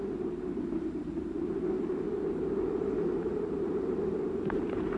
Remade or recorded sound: remade